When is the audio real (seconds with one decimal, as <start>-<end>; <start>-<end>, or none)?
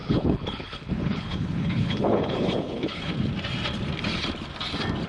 3.1-5.1